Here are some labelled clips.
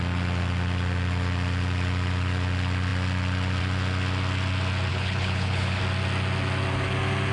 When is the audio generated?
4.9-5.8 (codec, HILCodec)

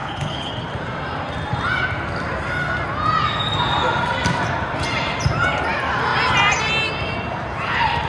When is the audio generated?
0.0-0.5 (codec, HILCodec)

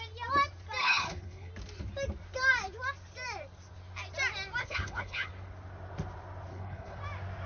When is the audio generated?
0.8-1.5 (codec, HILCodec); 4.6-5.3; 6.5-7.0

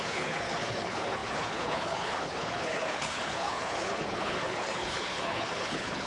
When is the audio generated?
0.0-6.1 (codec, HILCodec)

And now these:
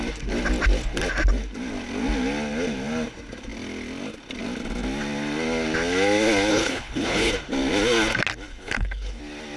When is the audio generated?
6.5-7.3 (codec, HILCodec); 8.5-9.2